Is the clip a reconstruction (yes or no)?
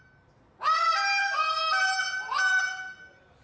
no